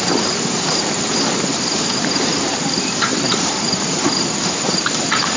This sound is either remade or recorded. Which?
remade